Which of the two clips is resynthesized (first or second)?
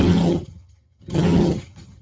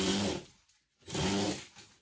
first